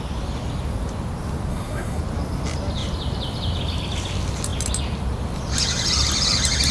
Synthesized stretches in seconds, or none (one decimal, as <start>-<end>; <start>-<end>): 1.5-2.0